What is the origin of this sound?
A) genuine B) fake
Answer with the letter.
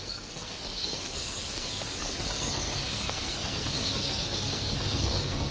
B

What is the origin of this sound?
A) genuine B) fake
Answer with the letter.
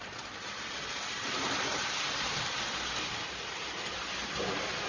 A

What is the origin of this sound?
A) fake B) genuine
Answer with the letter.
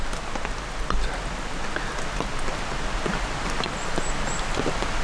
B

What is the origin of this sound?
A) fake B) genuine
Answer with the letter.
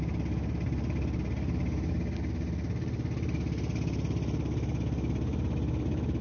B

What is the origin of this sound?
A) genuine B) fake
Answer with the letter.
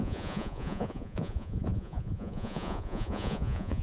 B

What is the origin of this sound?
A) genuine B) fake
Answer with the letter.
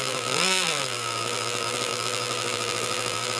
B